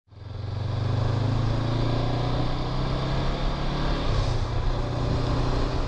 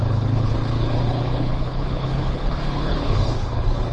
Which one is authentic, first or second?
first